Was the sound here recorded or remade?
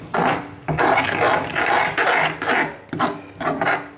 recorded